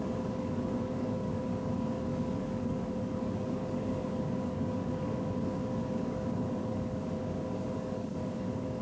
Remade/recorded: remade